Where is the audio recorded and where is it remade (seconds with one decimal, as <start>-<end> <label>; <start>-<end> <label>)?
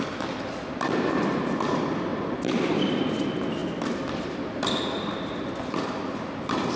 0.0-3.6 remade; 3.6-4.1 recorded; 4.1-6.8 remade